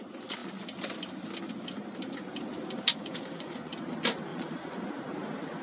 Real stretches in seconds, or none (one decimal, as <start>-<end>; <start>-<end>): 0.0-2.9; 3.7-4.3; 4.9-5.6